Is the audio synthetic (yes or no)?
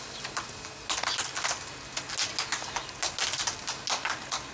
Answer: no